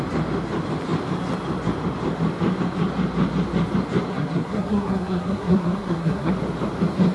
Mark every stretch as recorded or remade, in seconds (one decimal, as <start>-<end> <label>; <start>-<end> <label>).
0.0-4.1 recorded; 4.1-6.3 remade; 6.3-7.1 recorded